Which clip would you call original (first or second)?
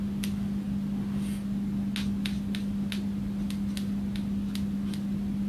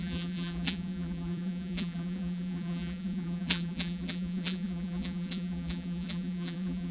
first